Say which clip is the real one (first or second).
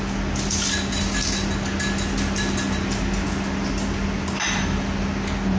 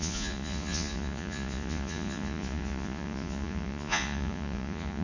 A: first